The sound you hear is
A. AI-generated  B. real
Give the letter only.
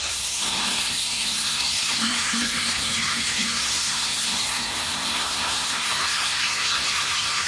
A